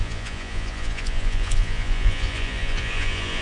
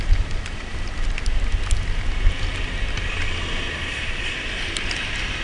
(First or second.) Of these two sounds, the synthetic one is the first